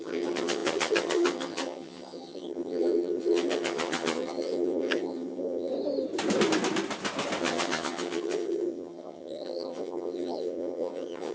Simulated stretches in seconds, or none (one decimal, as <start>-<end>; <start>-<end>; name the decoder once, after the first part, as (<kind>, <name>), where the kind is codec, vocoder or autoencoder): 0.0-5.7 (vocoder, HiFi-GAN); 7.4-11.3